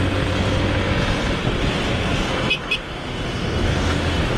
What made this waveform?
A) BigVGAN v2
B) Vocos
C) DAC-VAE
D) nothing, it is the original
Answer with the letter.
D